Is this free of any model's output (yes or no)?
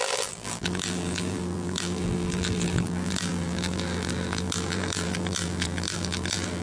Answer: no